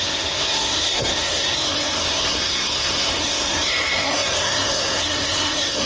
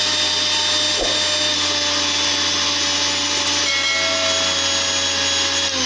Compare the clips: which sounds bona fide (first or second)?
second